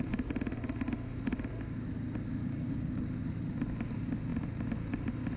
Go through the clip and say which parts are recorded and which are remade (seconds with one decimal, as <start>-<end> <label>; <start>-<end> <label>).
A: 0.0-2.4 recorded; 2.4-3.0 remade; 3.0-5.4 recorded